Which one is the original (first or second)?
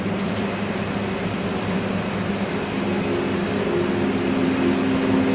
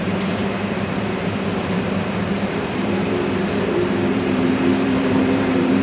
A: first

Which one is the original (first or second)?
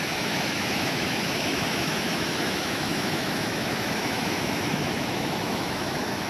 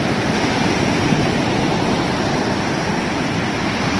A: second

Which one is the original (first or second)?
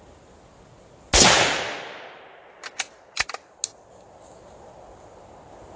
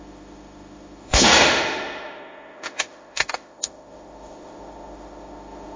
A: first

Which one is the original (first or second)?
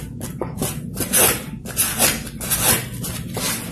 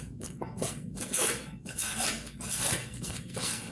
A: first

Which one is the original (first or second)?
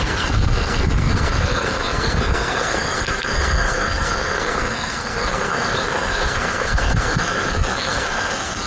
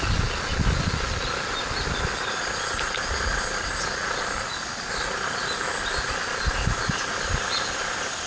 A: second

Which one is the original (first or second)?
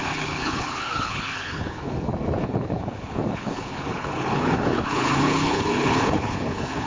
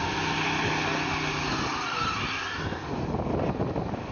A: second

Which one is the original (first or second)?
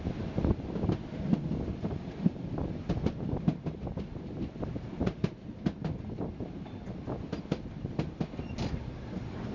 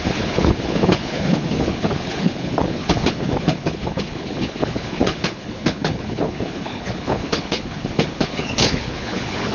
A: first